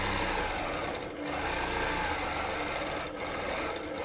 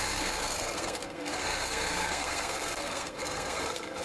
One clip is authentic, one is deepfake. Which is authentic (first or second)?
first